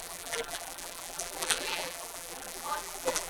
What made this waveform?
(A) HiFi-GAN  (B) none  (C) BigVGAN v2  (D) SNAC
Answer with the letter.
C